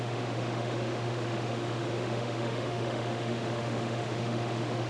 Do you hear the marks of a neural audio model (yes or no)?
yes